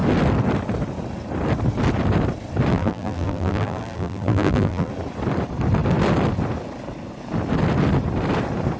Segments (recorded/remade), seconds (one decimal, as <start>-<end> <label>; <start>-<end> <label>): 0.0-2.7 recorded; 2.7-4.9 remade; 4.9-8.8 recorded